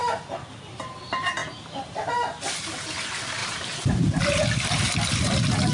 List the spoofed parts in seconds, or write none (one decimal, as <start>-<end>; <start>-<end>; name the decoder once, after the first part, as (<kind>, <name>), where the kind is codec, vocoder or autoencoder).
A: 1.4-2.1 (vocoder, BigVGAN v2); 3.4-3.9